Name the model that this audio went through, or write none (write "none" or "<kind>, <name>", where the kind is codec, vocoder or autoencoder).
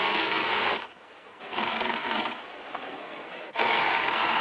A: codec, SNAC